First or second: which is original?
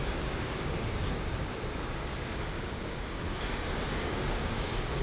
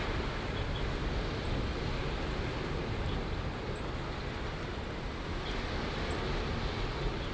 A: second